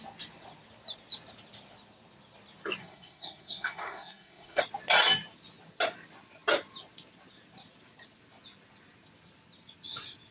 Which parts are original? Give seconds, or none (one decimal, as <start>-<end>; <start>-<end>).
0.0-2.8; 4.6-10.3